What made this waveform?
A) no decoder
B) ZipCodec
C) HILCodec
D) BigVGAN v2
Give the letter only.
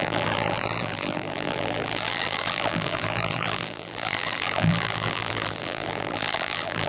D